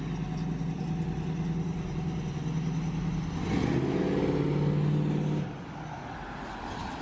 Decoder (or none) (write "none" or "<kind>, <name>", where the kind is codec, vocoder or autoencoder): none